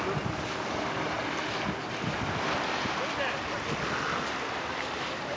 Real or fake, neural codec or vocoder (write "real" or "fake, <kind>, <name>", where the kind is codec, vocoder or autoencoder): real